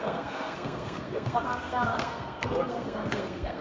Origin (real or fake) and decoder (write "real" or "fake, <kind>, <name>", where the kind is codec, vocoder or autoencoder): fake, codec, SNAC